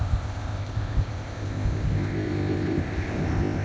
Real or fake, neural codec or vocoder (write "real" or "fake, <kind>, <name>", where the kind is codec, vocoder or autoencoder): fake, codec, ZipCodec